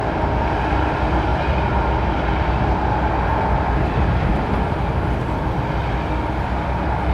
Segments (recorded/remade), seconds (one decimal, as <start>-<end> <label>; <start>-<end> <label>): 0.0-7.1 recorded